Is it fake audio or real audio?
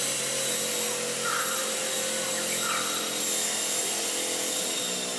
real